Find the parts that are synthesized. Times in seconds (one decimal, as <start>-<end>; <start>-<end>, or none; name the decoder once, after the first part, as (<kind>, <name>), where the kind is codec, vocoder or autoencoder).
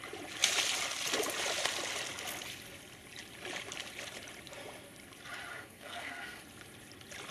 5.5-6.4 (codec, SNAC)